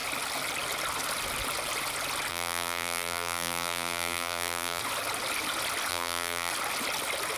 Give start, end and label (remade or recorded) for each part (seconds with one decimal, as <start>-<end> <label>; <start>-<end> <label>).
0.0-2.3 recorded; 2.3-4.8 remade; 4.8-5.9 recorded; 5.9-6.5 remade; 6.5-7.4 recorded